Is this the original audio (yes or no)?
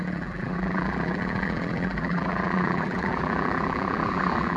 no